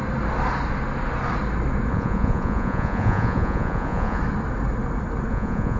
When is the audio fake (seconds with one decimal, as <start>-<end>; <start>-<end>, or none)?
1.9-4.2; 5.3-5.8